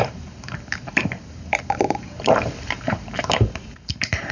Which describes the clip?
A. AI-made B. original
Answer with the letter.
A